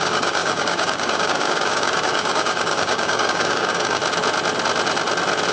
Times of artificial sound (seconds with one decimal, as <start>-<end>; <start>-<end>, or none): 0.0-4.0